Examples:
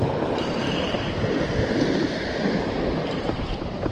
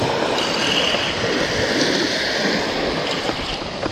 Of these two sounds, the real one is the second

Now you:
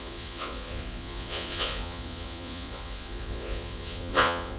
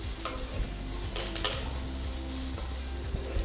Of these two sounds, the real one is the second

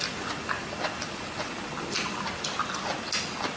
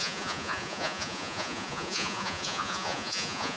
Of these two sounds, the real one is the first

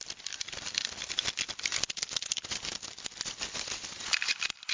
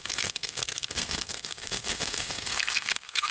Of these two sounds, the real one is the first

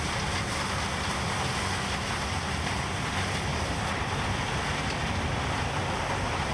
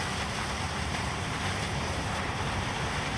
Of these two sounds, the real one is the first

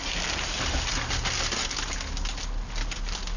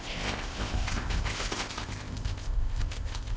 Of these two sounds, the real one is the first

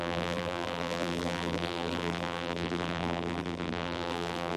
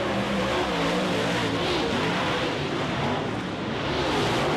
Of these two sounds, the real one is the second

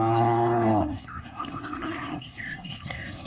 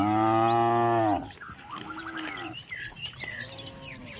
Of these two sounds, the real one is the second